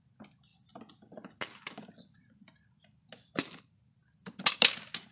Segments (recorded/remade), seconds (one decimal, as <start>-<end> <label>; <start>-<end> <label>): 0.0-5.1 recorded